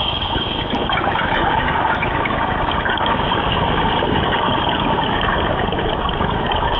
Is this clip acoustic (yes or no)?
no